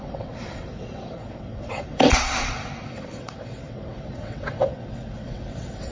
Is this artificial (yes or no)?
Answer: yes